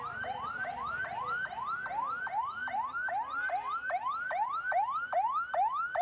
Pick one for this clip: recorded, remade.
recorded